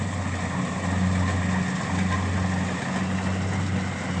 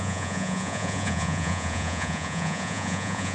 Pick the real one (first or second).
first